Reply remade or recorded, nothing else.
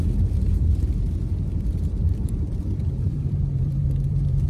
remade